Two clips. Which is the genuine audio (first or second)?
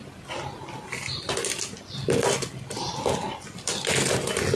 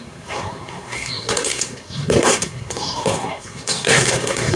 first